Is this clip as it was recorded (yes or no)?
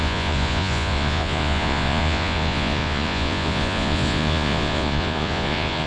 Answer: no